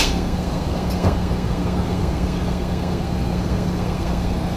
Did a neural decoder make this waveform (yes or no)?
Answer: yes